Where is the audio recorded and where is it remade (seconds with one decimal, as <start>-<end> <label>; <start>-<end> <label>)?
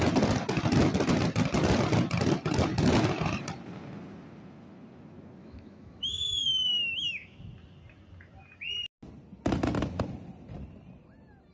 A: 0.0-5.4 recorded; 5.4-7.4 remade; 7.4-11.5 recorded